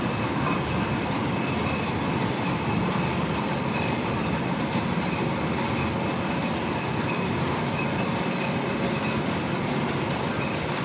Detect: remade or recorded recorded